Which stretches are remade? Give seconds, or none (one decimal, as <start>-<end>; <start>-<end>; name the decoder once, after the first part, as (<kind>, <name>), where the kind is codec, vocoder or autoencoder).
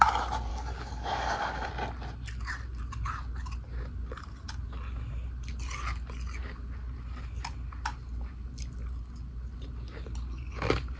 0.5-1.7 (codec, DAC)